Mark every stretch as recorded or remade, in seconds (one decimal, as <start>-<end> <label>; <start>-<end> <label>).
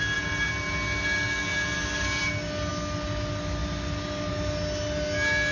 0.0-5.5 recorded